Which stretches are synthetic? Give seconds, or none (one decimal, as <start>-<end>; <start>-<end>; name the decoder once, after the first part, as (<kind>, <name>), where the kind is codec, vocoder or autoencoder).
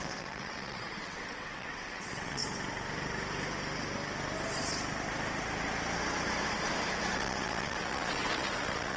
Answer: 0.0-2.4 (vocoder, WaveNeXt); 7.1-9.0